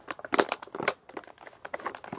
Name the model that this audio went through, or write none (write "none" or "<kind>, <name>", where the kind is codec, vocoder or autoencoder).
none